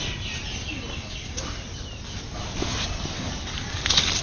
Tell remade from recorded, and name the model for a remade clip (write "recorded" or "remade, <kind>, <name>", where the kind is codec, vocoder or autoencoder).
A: recorded